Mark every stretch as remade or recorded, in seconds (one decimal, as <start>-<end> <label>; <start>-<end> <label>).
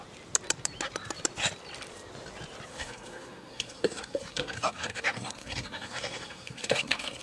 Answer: 0.0-2.7 recorded; 2.7-7.2 remade